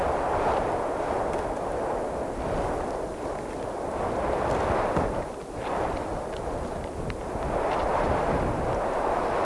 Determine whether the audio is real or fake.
real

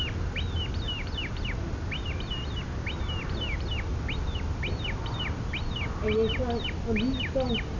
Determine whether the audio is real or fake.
real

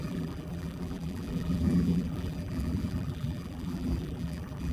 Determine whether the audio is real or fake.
fake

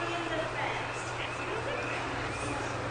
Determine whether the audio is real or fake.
real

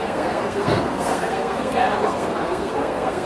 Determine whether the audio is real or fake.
fake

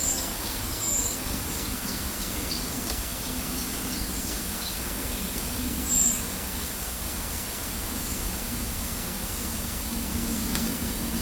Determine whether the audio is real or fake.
fake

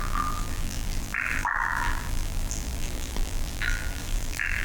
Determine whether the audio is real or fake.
fake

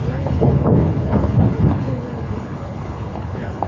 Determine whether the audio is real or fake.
fake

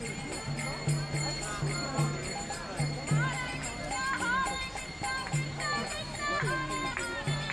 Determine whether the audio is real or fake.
real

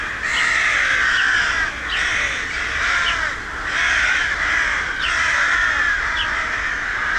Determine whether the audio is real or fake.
real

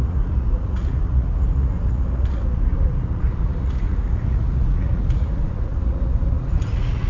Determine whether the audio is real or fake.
fake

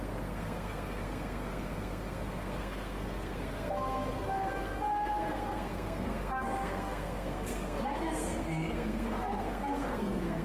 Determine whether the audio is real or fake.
fake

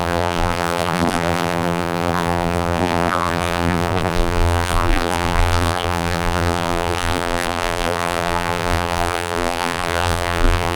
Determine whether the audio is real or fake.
fake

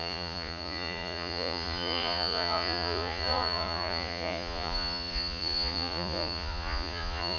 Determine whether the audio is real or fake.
fake